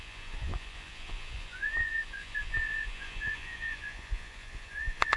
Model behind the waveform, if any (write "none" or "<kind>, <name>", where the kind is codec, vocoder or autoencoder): vocoder, Vocos